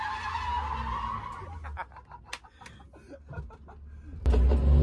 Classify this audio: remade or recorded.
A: recorded